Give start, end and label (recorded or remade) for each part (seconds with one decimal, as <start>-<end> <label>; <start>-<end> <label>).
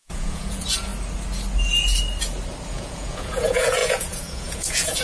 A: 0.0-0.9 remade; 0.9-2.7 recorded; 2.7-5.0 remade